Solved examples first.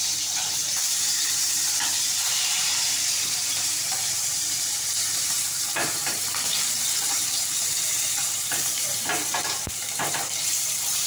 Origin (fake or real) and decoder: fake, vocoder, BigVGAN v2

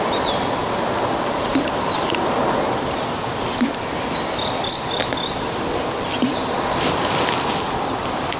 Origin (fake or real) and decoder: fake, vocoder, BigVGAN v2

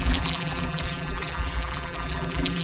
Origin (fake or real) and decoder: fake, vocoder, BigVGAN v2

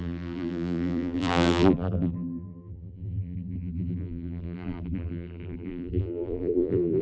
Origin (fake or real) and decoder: fake, vocoder, BigVGAN v2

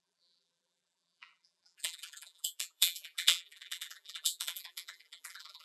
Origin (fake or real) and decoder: fake, vocoder, BigVGAN v2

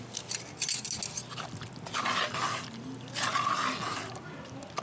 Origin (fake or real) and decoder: real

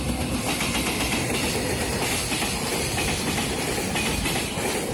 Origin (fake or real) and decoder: real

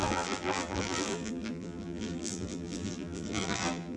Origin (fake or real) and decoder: fake, vocoder, BigVGAN v2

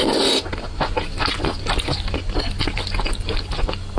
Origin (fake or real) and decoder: real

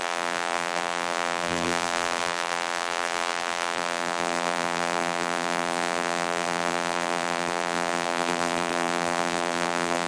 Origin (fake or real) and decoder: fake, vocoder, BigVGAN v2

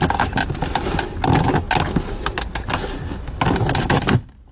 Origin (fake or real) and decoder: real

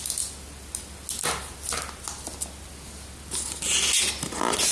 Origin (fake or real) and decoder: real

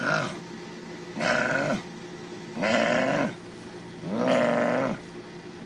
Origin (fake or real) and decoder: real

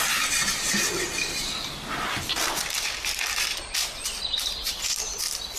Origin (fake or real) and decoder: real